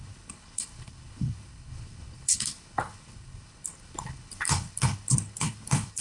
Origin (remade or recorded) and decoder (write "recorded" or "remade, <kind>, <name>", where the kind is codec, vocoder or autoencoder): remade, codec, HILCodec